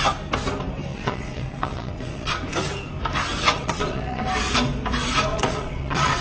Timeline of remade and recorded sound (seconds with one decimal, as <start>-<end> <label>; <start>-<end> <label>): 0.0-0.9 recorded; 0.9-2.3 remade; 2.3-3.3 recorded; 3.3-4.2 remade; 4.2-5.3 recorded; 5.3-6.2 remade